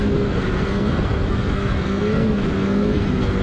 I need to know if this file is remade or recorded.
remade